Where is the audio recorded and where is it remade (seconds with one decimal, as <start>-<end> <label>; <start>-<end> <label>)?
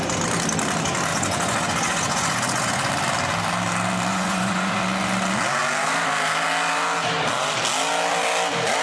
0.0-1.1 recorded; 1.1-2.9 remade; 2.9-4.1 recorded; 4.1-4.8 remade; 4.8-8.8 recorded